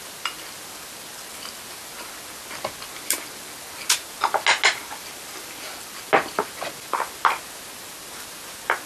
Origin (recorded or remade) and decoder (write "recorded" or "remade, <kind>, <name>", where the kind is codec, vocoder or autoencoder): recorded